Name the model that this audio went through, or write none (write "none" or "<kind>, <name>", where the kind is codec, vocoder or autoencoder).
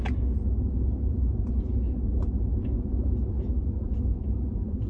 none